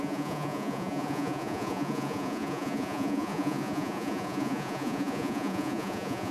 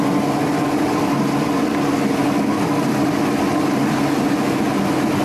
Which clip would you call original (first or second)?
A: second